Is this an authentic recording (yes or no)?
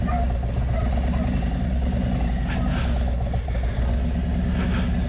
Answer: yes